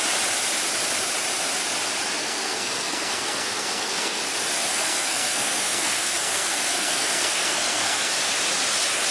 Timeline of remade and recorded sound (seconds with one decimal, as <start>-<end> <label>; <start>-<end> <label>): 0.0-2.2 recorded; 2.2-4.2 remade; 4.2-4.7 recorded; 4.7-8.1 remade; 8.1-9.1 recorded